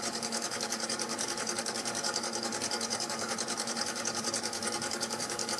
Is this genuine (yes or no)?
no